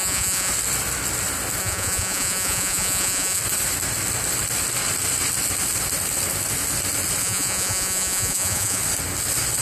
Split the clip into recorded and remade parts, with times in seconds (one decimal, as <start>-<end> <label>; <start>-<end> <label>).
0.0-0.5 remade; 0.5-1.6 recorded; 1.6-3.4 remade; 3.4-7.2 recorded; 7.2-8.8 remade; 8.8-9.6 recorded